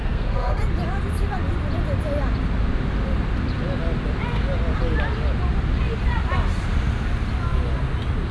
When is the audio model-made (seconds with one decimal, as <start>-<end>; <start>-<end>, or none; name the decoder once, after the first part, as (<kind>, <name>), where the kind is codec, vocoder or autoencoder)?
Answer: 0.0-0.6 (codec, SNAC)